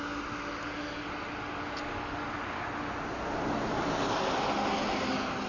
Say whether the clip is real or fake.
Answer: real